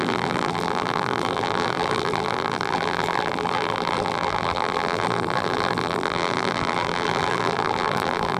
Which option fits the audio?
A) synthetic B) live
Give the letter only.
A